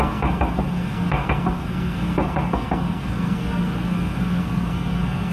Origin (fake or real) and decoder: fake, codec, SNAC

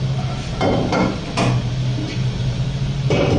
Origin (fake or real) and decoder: real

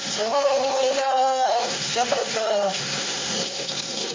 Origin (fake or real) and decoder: fake, codec, SNAC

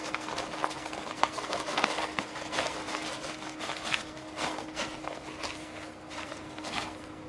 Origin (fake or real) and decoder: fake, codec, SNAC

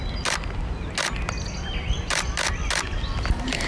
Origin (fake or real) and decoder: real